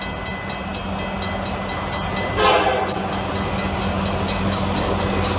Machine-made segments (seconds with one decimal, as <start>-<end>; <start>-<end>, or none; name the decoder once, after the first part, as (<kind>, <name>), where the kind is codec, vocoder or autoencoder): none